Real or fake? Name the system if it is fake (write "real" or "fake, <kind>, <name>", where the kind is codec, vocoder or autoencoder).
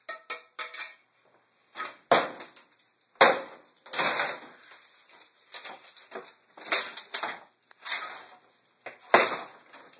real